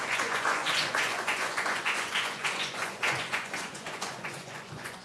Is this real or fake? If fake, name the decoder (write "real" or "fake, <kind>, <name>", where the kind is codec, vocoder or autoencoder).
fake, vocoder, Vocos